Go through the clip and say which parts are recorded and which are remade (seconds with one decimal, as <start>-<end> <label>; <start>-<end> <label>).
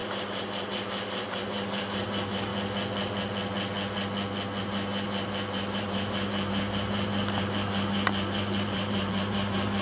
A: 0.0-2.5 remade; 2.5-4.6 recorded; 4.6-9.8 remade